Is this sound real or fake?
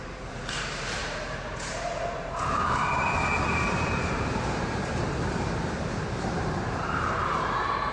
fake